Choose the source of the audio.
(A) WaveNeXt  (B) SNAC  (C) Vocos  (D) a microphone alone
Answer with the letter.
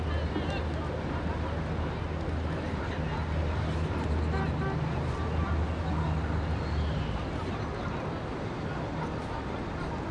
D